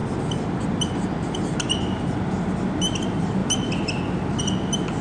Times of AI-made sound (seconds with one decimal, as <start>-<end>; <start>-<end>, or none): 3.4-4.4